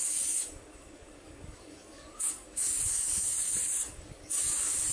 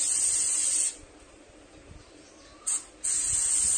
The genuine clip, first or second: second